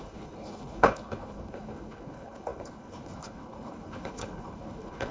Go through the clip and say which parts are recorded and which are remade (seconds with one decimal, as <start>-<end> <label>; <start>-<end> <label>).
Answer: 0.0-5.1 remade